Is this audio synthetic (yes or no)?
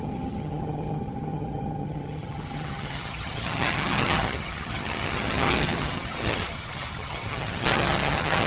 yes